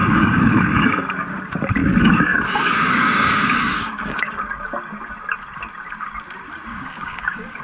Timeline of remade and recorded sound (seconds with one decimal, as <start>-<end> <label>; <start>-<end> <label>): 0.0-1.4 remade; 1.4-1.8 recorded; 1.8-4.3 remade; 4.3-6.7 recorded; 6.7-7.6 remade